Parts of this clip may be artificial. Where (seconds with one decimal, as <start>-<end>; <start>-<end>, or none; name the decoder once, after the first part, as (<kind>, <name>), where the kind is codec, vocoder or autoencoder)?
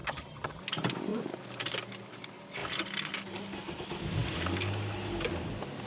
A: 0.0-0.6 (vocoder, HiFi-GAN)